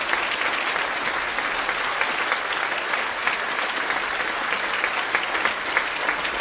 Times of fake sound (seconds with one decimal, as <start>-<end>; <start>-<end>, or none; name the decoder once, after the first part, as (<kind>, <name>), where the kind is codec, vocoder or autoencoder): none